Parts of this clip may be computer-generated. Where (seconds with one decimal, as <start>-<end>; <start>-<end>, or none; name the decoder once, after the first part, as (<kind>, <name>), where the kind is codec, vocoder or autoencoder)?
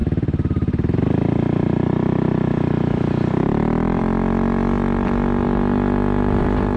0.0-4.0 (vocoder, BigVGAN v2)